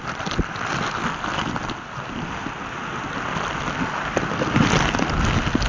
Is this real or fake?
real